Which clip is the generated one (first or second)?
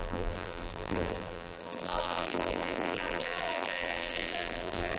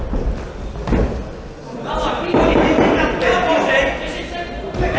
first